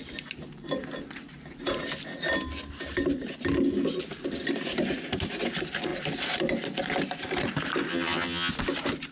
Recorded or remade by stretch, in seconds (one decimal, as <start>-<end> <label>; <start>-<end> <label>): 0.0-7.9 recorded; 7.9-8.5 remade; 8.5-9.1 recorded